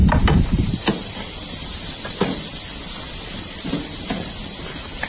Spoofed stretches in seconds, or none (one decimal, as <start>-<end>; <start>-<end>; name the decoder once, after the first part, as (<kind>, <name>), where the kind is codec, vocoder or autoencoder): none